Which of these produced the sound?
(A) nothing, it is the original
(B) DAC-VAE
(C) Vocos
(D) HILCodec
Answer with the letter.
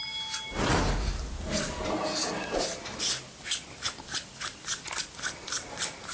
A